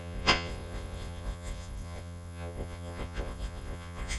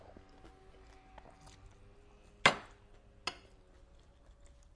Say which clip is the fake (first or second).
first